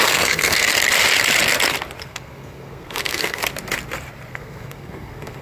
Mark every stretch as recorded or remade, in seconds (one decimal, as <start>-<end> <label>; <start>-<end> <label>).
0.0-0.7 remade; 0.7-2.0 recorded; 2.0-3.4 remade; 3.4-4.3 recorded; 4.3-5.4 remade